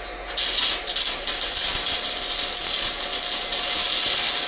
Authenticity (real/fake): real